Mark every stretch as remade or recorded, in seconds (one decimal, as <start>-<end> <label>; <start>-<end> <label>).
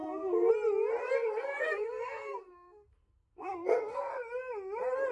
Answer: 0.0-0.5 remade; 0.5-1.0 recorded; 1.0-4.1 remade; 4.1-5.1 recorded